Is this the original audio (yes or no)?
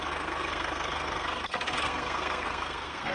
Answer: no